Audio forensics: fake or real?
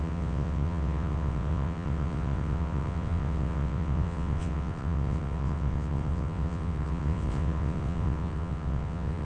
fake